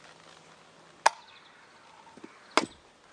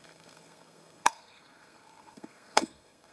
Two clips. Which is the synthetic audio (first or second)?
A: second